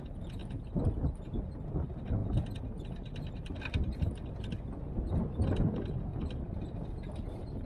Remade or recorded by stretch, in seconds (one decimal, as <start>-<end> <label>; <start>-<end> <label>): 0.0-6.1 recorded; 6.1-6.9 remade; 6.9-7.7 recorded